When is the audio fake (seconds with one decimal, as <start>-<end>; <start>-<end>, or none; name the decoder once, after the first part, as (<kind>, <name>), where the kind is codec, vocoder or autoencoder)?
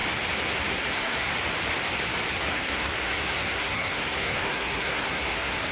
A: 0.7-1.3 (codec, SNAC); 2.3-5.7